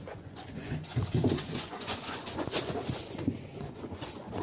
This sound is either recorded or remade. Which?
remade